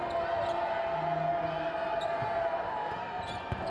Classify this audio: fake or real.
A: real